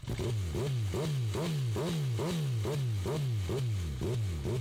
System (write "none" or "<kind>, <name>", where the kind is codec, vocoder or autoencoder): none